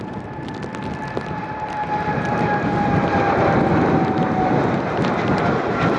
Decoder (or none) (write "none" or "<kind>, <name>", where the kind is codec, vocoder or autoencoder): none